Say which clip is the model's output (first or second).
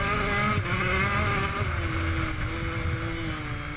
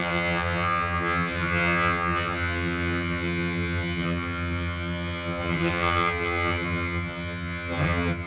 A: second